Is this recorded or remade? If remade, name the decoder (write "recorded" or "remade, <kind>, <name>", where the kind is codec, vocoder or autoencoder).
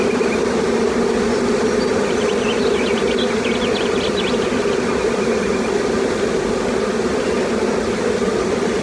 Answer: recorded